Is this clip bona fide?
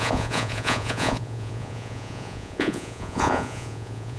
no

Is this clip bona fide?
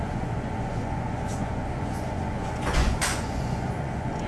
no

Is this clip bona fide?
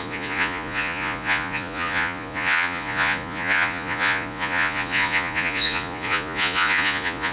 no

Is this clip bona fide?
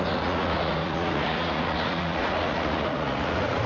no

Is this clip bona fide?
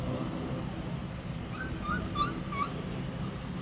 yes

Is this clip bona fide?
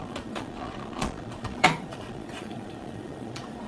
no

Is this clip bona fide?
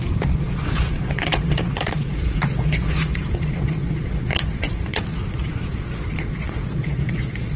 no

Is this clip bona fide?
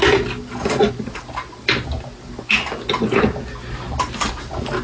yes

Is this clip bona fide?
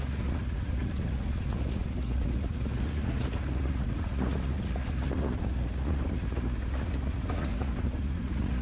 no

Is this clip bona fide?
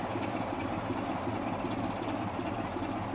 yes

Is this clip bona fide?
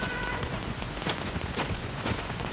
no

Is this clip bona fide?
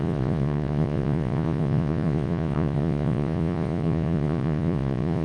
no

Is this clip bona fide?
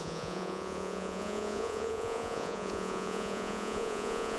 no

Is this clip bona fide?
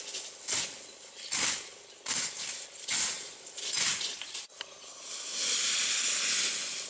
yes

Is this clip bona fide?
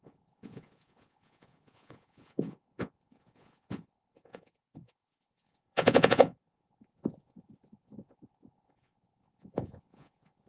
no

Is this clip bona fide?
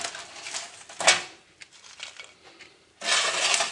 yes